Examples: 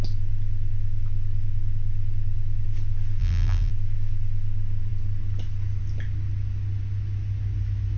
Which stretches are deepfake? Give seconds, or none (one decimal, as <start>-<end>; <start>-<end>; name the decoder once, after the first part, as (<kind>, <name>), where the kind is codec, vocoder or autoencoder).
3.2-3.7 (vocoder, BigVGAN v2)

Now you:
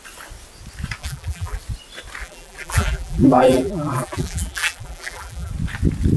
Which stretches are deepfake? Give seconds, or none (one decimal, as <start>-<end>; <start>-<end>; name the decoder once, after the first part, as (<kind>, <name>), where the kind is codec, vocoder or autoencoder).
1.0-1.6 (vocoder, BigVGAN v2); 2.2-5.5

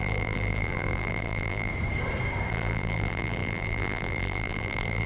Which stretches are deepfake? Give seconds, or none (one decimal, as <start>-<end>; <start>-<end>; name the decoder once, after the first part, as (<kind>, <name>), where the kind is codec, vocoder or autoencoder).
0.0-1.7 (vocoder, BigVGAN v2); 2.5-5.1

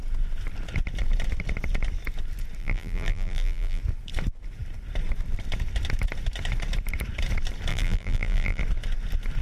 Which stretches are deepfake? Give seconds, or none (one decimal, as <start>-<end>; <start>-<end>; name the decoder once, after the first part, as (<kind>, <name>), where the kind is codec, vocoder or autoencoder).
2.6-3.8 (vocoder, BigVGAN v2); 7.7-8.6

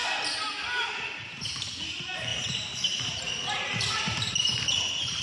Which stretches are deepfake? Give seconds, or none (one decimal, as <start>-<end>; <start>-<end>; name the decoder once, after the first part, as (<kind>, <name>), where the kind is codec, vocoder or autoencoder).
2.3-4.7 (vocoder, BigVGAN v2)

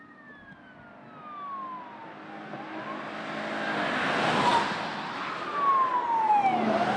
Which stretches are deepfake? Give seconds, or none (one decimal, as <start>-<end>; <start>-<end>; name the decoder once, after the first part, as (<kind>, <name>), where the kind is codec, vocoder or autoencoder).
none

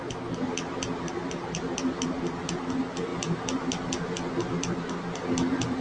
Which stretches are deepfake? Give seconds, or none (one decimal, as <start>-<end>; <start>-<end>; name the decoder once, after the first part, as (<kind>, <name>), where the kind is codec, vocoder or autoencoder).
none

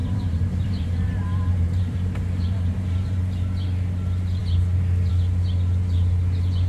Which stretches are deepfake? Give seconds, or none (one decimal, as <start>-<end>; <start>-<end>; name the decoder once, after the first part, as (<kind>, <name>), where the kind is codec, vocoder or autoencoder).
0.0-3.2 (vocoder, BigVGAN v2)